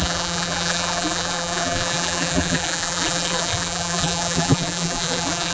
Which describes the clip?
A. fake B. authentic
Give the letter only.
A